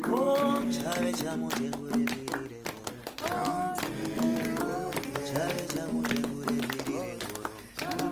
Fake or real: real